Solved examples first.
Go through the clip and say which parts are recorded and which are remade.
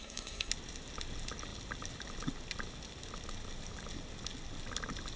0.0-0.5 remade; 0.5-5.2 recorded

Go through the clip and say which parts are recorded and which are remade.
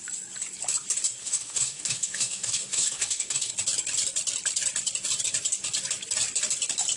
0.0-1.2 recorded; 1.2-3.5 remade; 3.5-7.0 recorded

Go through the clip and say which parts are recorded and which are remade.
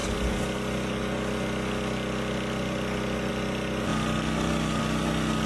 0.0-5.5 recorded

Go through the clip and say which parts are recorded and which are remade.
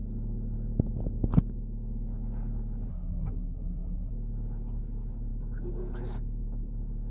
0.0-2.9 recorded; 2.9-4.1 remade; 4.1-7.1 recorded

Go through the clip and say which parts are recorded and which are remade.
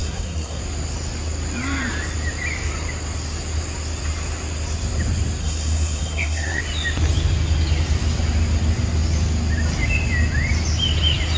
0.0-0.6 remade; 0.6-5.4 recorded; 5.4-6.6 remade; 6.6-11.4 recorded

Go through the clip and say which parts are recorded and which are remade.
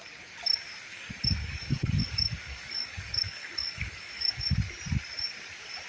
0.0-0.9 recorded; 0.9-4.4 remade; 4.4-5.9 recorded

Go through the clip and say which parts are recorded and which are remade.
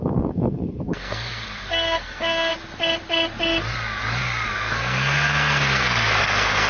0.0-2.5 remade; 2.5-4.5 recorded; 4.5-6.7 remade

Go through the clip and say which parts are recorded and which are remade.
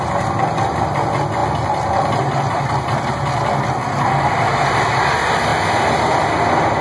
0.0-6.8 recorded